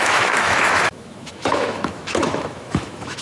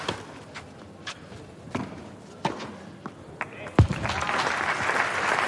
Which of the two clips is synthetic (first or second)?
first